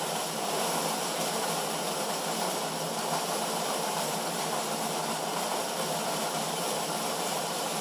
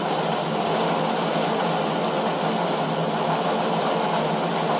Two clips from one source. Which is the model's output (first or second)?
first